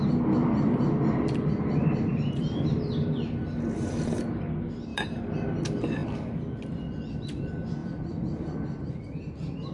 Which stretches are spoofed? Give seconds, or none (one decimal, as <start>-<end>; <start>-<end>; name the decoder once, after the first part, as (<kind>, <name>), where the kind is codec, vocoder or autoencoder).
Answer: 1.8-4.2 (vocoder, BigVGAN v2); 4.9-5.6